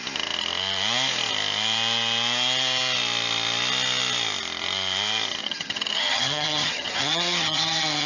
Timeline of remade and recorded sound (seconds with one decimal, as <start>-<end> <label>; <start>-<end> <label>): 0.0-5.4 recorded; 5.4-8.1 remade